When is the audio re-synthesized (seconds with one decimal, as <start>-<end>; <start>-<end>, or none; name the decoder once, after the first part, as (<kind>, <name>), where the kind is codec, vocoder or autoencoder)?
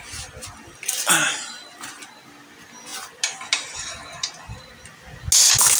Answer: none